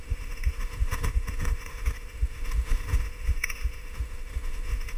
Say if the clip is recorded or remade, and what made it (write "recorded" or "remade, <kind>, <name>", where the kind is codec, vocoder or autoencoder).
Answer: remade, autoencoder, DAC-VAE